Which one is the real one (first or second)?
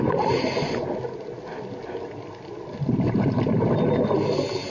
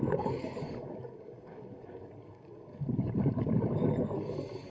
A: first